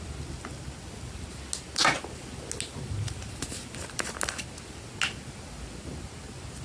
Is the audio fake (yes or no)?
no